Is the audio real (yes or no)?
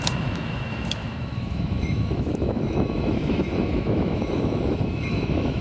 no